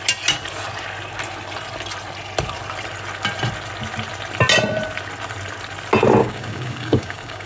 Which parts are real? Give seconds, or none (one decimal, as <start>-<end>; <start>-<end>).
0.0-6.2